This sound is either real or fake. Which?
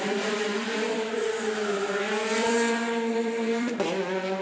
fake